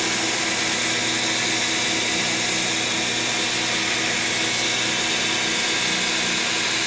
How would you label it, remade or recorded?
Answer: recorded